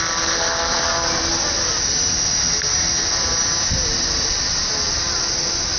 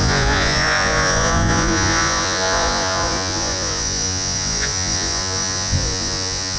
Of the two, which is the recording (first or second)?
first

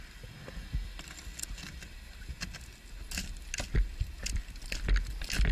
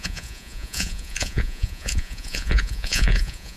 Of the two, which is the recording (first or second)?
first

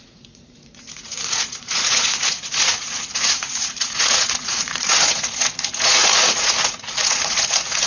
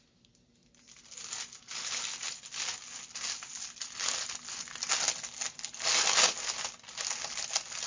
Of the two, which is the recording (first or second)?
second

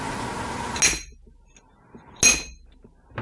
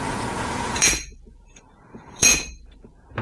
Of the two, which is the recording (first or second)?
first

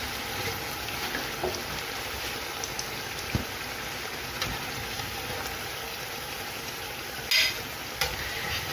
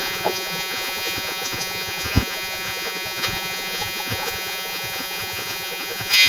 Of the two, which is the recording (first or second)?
first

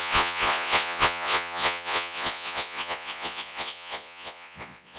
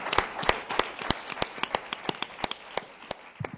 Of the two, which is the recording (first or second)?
second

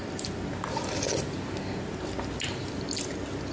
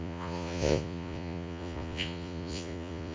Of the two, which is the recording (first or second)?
first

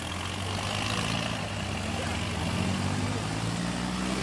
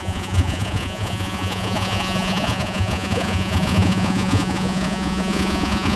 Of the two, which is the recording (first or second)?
first